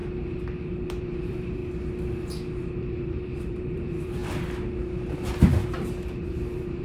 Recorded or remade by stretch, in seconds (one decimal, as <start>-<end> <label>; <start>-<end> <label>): 0.0-1.0 recorded; 1.0-1.6 remade; 1.6-2.6 recorded; 2.6-4.2 remade; 4.2-6.2 recorded; 6.2-6.8 remade